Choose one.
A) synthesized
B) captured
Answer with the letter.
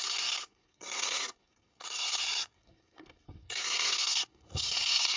A